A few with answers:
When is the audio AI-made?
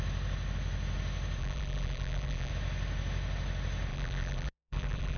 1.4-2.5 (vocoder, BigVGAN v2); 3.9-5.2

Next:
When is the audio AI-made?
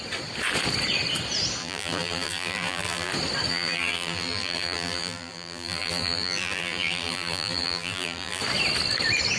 1.6-3.1 (vocoder, BigVGAN v2); 3.5-8.4